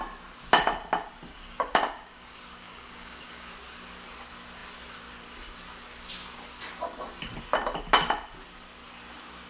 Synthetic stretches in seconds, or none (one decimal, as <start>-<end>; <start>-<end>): 1.3-3.5